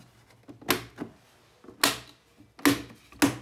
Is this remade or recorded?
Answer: recorded